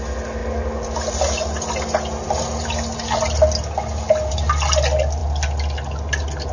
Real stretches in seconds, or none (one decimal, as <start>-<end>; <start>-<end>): 0.0-6.5